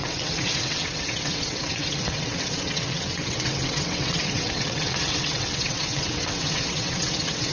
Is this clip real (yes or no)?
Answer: no